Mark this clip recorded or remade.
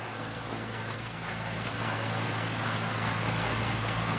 remade